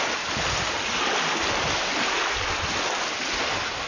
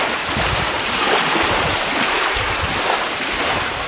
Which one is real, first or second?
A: first